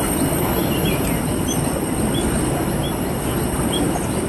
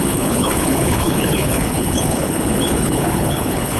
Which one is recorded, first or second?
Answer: first